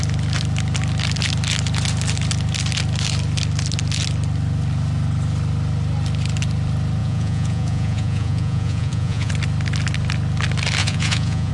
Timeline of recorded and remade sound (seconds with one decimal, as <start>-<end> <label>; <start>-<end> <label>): 0.0-7.0 recorded; 7.0-9.3 remade; 9.3-10.8 recorded; 10.8-11.5 remade